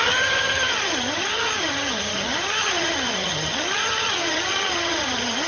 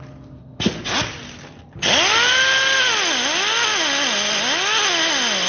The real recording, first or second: second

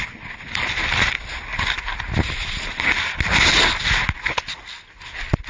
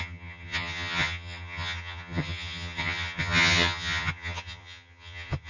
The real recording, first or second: first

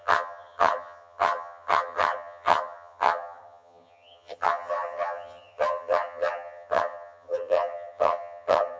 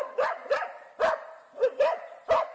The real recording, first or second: second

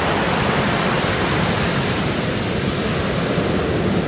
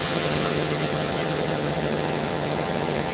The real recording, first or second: first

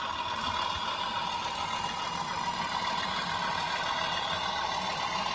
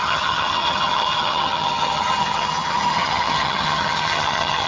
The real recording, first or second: first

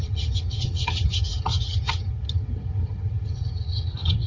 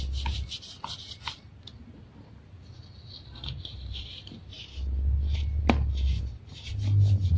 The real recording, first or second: second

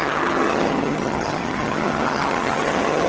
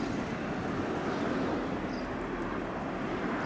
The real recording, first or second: second